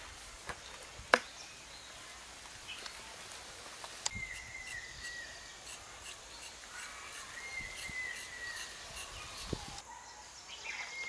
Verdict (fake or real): real